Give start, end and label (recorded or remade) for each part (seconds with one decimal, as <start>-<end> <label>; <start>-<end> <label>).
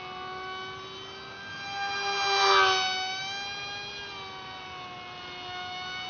0.0-6.1 recorded